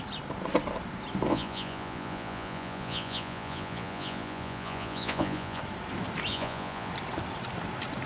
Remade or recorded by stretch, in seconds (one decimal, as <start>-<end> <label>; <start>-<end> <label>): 0.0-1.3 recorded; 1.3-5.6 remade; 5.6-6.3 recorded; 6.3-6.9 remade; 6.9-8.1 recorded